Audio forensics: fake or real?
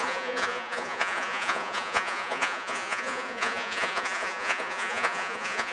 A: fake